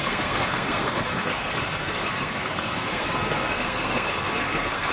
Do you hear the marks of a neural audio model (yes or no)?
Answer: yes